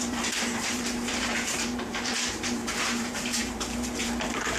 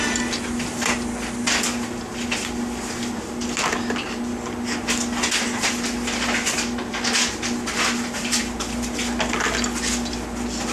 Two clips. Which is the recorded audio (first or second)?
second